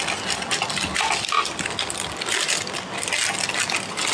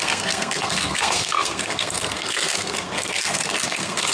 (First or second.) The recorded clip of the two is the first